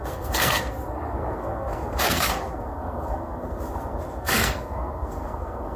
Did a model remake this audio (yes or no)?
yes